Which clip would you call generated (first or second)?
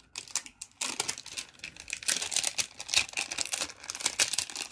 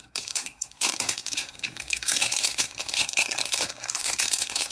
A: second